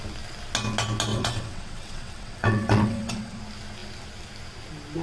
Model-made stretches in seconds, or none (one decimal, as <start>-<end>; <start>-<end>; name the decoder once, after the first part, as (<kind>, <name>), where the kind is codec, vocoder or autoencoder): 1.1-3.4 (vocoder, WaveNeXt)